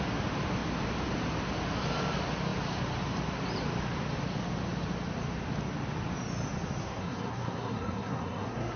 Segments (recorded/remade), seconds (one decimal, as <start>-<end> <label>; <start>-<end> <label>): 0.0-6.8 recorded; 6.8-8.8 remade